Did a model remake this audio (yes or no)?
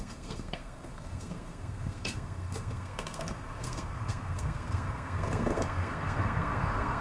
yes